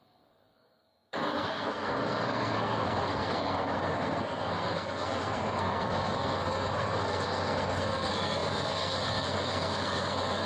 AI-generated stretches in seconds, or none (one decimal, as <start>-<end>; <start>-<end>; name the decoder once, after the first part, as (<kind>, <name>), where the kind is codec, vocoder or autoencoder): 0.0-10.5 (codec, SNAC)